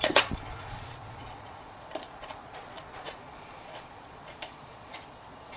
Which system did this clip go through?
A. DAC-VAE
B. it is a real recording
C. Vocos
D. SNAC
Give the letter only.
C